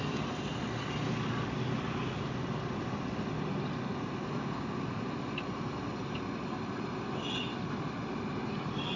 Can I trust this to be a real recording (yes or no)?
yes